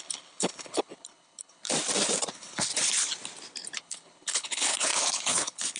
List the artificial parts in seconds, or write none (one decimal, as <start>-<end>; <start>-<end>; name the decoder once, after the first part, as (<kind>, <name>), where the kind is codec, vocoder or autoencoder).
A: 0.0-1.7 (codec, HILCodec); 2.3-2.7; 3.8-5.8